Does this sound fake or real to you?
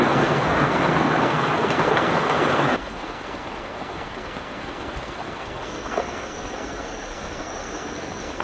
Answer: fake